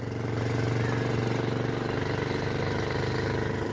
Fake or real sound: real